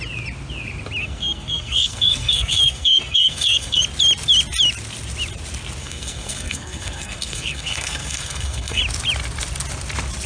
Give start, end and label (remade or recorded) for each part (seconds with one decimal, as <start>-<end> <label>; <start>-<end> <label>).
0.0-1.0 recorded; 1.0-3.8 remade; 3.8-5.8 recorded; 5.8-8.8 remade; 8.8-10.3 recorded